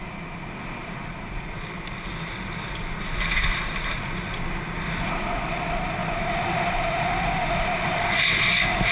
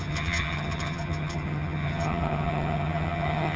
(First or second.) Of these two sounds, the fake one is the second